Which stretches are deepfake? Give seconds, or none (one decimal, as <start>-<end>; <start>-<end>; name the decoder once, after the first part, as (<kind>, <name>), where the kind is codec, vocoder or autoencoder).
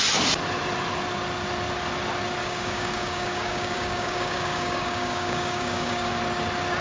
2.4-6.2 (codec, DAC)